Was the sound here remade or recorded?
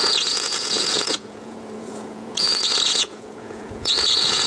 remade